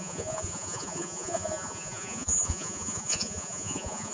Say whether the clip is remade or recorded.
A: remade